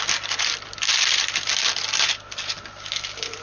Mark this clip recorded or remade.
recorded